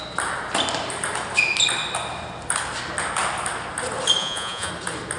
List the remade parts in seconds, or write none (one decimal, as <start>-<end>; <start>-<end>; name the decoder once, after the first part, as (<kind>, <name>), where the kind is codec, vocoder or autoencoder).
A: 4.2-4.7 (vocoder, Vocos)